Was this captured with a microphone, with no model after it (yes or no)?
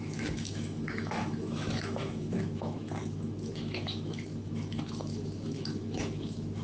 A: no